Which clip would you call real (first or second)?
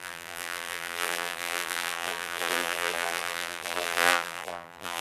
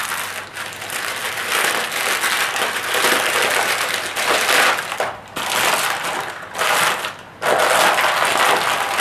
second